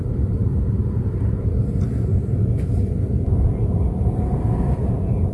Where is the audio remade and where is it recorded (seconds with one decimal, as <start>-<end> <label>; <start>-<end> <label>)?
0.0-2.1 remade; 2.1-5.3 recorded